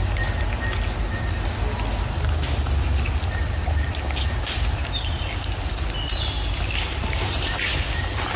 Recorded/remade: recorded